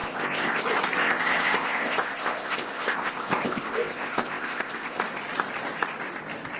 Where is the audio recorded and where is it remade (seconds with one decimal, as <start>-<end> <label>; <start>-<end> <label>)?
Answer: 0.0-0.6 remade; 0.6-1.0 recorded; 1.0-5.0 remade; 5.0-6.6 recorded